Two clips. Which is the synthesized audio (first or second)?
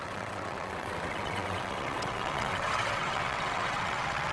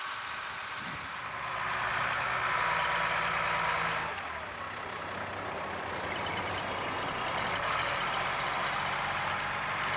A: first